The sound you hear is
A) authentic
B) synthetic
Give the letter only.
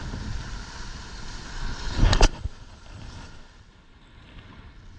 B